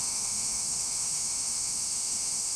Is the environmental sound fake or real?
fake